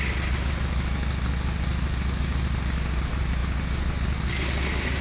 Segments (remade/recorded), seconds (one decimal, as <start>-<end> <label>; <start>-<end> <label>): 0.0-5.0 recorded